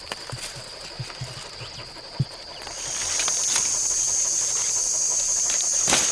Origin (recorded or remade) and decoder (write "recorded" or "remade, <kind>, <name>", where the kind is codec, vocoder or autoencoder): remade, vocoder, BigVGAN v2